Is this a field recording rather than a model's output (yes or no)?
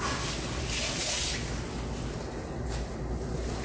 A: yes